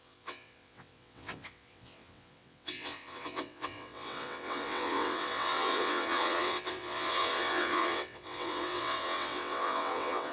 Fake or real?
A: fake